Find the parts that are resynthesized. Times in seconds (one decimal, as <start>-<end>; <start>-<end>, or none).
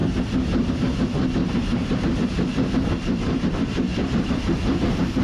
1.4-2.0; 2.5-3.5; 3.9-4.8